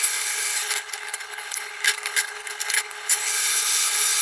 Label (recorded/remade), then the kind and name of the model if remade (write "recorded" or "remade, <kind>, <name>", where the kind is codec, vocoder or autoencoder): remade, codec, HILCodec